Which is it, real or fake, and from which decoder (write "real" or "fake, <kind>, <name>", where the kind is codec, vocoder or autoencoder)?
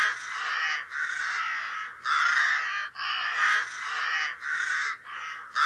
real